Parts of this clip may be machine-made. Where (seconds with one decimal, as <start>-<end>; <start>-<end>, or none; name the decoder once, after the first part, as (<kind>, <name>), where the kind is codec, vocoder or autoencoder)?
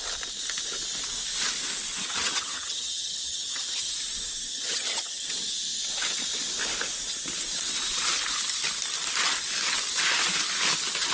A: 2.0-3.9 (vocoder, HiFi-GAN); 4.5-5.3